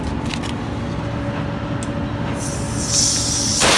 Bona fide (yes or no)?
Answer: yes